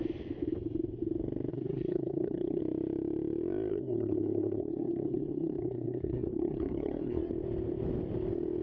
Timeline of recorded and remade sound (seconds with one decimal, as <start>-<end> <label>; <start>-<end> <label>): 0.0-1.5 recorded; 1.5-2.6 remade; 2.6-3.7 recorded; 3.7-7.3 remade; 7.3-8.6 recorded